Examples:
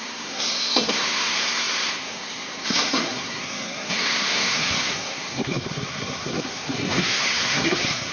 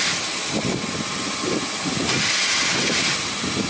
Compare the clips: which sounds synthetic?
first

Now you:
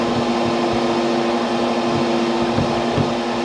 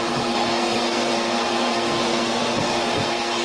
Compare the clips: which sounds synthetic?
second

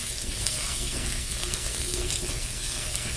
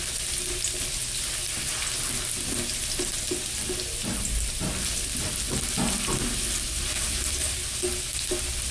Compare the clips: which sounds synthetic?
first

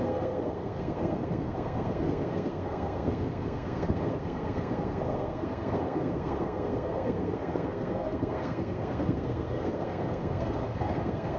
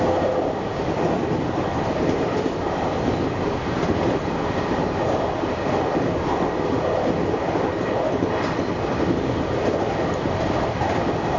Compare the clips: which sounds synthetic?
first